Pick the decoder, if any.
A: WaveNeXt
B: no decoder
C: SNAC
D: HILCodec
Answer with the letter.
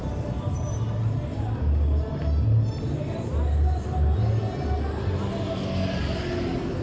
B